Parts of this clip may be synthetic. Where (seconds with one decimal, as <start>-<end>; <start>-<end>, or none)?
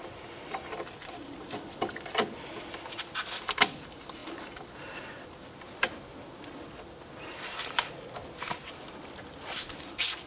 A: none